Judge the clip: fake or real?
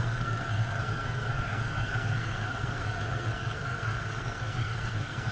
fake